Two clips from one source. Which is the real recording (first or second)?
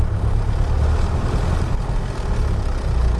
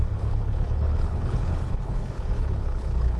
first